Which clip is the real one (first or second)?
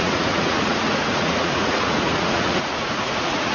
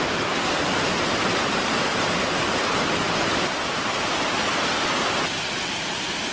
second